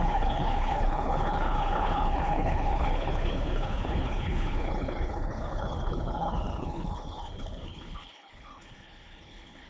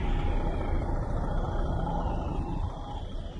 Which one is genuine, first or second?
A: second